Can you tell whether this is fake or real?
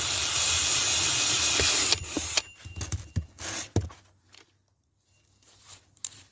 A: real